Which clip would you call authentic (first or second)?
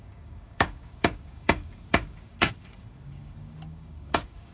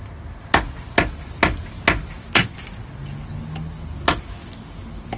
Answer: second